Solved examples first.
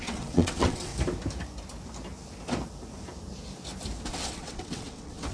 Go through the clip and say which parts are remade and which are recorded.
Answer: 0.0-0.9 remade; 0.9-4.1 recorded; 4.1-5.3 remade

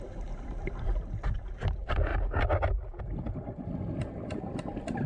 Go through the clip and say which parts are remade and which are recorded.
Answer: 0.0-2.1 remade; 2.1-3.0 recorded; 3.0-5.1 remade

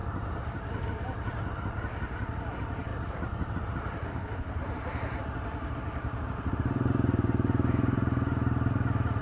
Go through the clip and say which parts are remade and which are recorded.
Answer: 0.0-4.1 recorded; 4.1-4.6 remade; 4.6-9.2 recorded

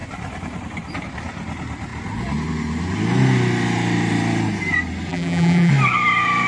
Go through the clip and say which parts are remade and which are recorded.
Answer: 0.0-5.1 recorded; 5.1-5.7 remade; 5.7-6.5 recorded

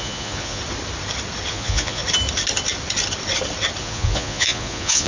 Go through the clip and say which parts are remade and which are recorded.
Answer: 0.0-0.6 remade; 0.6-1.5 recorded; 1.5-2.0 remade; 2.0-3.8 recorded; 3.8-5.1 remade